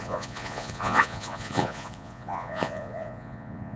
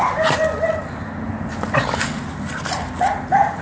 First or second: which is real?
second